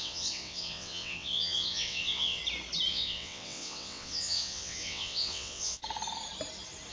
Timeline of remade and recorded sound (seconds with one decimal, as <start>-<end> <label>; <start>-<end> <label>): 0.0-2.4 remade; 2.4-2.9 recorded; 2.9-5.8 remade; 5.8-6.9 recorded